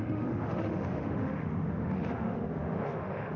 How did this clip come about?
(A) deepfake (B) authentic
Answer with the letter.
A